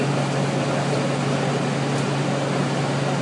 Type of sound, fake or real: real